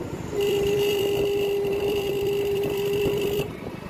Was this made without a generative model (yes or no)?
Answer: no